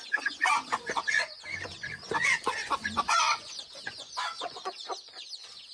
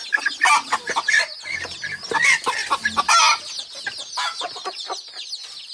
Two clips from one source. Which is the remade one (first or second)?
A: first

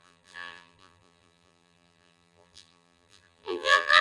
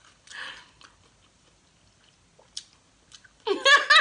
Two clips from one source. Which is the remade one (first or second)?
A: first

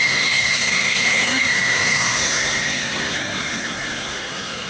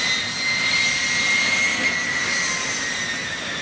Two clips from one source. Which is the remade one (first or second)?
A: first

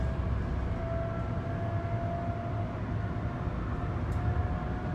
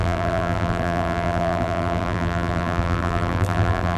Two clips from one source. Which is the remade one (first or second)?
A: second